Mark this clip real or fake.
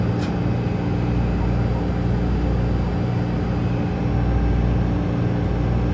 real